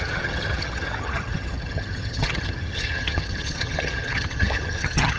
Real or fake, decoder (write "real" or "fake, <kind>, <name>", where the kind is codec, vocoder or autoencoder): fake, vocoder, HiFi-GAN